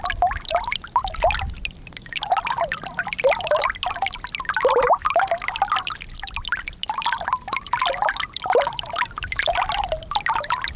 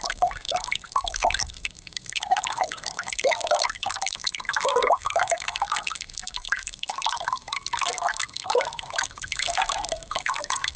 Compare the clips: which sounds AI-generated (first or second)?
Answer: second